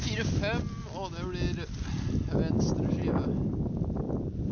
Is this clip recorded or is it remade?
recorded